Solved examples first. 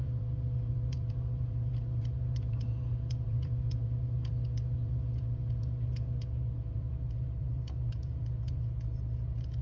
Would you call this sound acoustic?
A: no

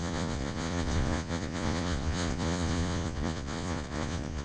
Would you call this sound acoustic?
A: no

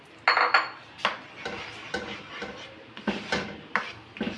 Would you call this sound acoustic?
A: yes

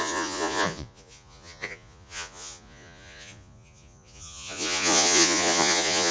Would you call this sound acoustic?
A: no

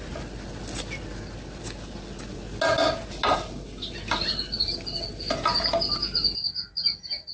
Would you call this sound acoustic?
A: yes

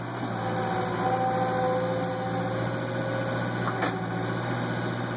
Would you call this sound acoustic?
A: yes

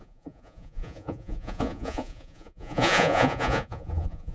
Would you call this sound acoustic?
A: no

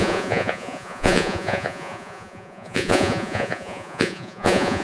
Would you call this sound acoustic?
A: no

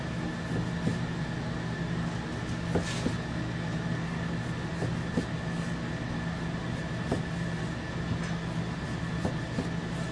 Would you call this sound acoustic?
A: yes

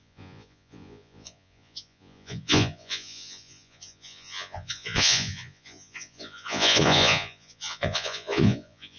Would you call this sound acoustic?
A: no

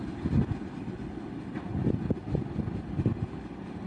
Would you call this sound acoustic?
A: yes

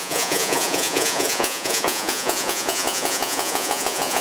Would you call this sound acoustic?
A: no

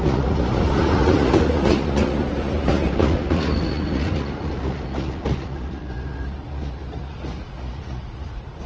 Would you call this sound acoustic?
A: no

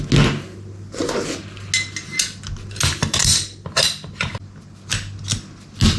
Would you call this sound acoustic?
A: yes